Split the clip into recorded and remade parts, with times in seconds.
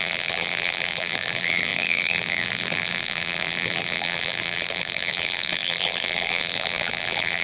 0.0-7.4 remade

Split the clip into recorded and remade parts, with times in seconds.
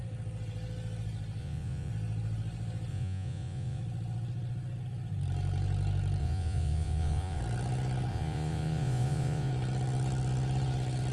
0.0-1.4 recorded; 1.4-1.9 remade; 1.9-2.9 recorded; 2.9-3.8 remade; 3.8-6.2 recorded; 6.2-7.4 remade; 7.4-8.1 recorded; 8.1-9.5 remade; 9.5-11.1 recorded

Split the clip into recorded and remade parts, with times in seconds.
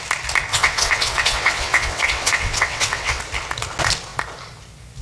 0.0-0.5 recorded; 0.5-3.2 remade; 3.2-5.0 recorded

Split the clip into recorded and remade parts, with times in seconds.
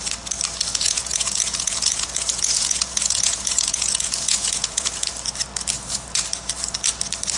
0.0-0.7 recorded; 0.7-5.1 remade; 5.1-7.4 recorded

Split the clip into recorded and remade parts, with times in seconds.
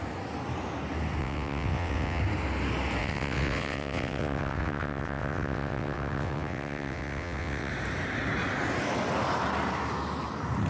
0.0-1.2 recorded; 1.2-2.2 remade; 2.2-3.0 recorded; 3.0-7.7 remade; 7.7-10.7 recorded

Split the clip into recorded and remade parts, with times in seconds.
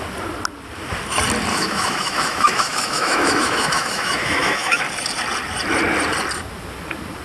0.0-1.5 recorded; 1.5-4.8 remade; 4.8-7.2 recorded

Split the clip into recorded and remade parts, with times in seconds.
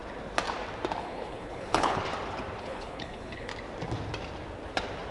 0.0-1.0 recorded; 1.0-2.0 remade; 2.0-2.6 recorded; 2.6-3.5 remade; 3.5-5.1 recorded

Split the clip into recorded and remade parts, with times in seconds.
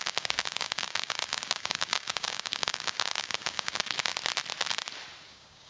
0.0-4.1 remade; 4.1-5.3 recorded; 5.3-5.7 remade